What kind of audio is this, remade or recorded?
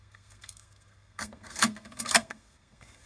remade